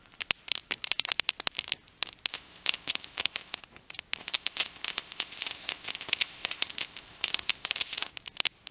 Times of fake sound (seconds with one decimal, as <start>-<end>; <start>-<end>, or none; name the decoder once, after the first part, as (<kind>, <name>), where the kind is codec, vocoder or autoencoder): 2.3-3.6 (codec, ZipCodec); 4.2-8.1